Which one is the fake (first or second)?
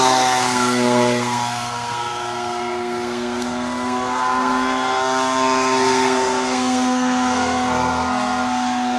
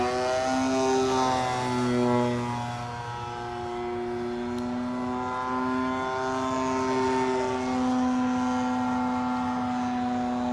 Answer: first